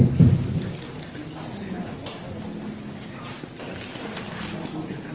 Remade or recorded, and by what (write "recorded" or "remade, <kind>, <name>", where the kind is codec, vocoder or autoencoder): recorded